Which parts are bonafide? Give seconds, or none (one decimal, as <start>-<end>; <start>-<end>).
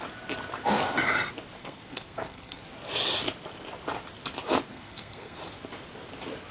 0.0-1.6; 2.6-4.7; 5.4-6.5